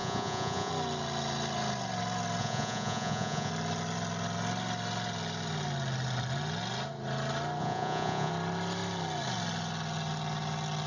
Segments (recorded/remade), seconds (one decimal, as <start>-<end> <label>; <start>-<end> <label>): 0.0-0.7 remade; 0.7-2.4 recorded; 2.4-3.5 remade; 3.5-7.6 recorded; 7.6-8.3 remade; 8.3-10.9 recorded